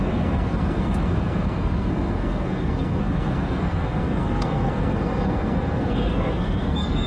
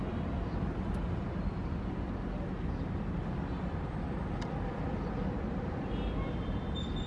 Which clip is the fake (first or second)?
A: first